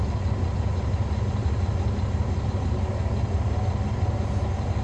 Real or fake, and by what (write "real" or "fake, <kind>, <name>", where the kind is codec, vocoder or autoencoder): real